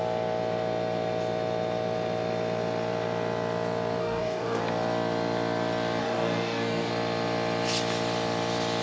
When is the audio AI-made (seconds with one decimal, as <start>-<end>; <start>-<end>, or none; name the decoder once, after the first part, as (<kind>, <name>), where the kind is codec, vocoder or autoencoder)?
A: 4.0-4.6 (codec, DAC); 6.0-6.9